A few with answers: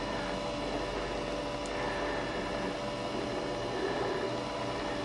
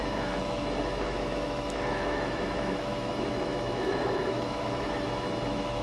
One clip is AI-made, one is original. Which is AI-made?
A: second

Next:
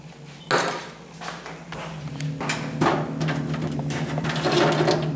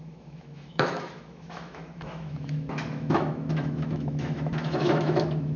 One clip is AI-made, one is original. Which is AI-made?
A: second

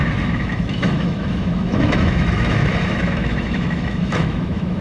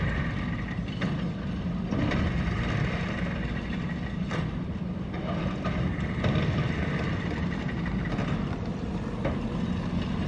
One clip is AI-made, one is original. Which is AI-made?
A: first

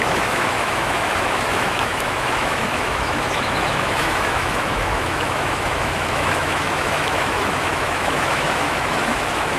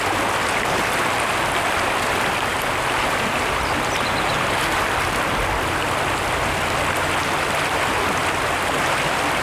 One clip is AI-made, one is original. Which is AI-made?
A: first